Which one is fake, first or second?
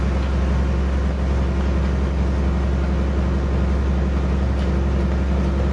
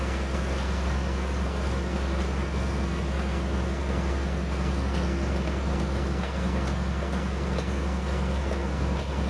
second